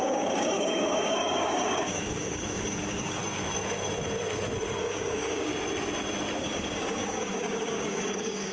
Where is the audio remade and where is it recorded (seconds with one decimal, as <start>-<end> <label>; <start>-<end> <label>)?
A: 0.0-3.2 remade; 3.2-4.8 recorded; 4.8-5.5 remade; 5.5-6.4 recorded; 6.4-8.5 remade